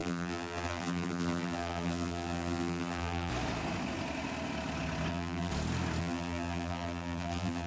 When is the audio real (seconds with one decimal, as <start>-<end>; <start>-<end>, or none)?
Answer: 3.3-5.1; 5.5-6.0